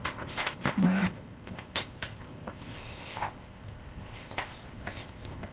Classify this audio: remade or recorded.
remade